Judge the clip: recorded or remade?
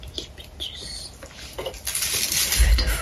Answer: recorded